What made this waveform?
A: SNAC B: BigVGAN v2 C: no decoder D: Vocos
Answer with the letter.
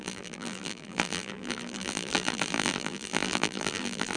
B